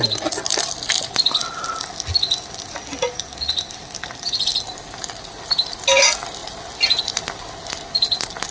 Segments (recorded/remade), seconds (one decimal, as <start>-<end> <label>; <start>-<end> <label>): 0.0-8.5 recorded